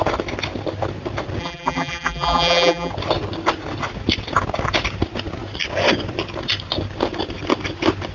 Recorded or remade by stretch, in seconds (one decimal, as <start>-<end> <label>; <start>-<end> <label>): 0.0-1.4 recorded; 1.4-2.9 remade; 2.9-8.1 recorded